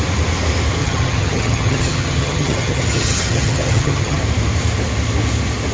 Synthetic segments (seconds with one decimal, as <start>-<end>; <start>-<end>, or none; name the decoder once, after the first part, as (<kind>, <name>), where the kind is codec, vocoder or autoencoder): 0.8-4.2 (vocoder, HiFi-GAN)